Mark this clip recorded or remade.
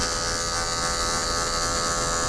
recorded